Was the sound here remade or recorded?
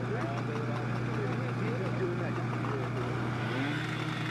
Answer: recorded